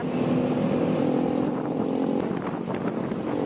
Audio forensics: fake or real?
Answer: real